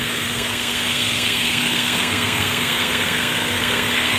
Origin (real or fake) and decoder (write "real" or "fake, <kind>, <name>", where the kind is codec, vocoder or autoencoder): fake, codec, SNAC